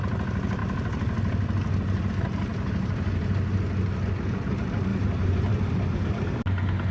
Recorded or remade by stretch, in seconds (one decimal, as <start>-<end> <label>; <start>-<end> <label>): 0.0-2.5 recorded; 2.5-3.2 remade; 3.2-4.9 recorded; 4.9-6.2 remade; 6.2-6.9 recorded

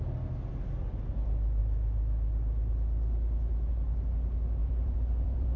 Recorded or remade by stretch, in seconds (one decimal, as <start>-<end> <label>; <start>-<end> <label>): 0.0-4.6 recorded; 4.6-5.6 remade

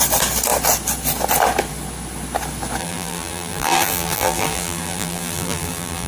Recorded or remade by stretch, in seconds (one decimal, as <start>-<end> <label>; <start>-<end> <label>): 0.0-2.8 recorded; 2.8-6.1 remade